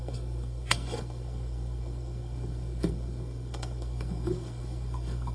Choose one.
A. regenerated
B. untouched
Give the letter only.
A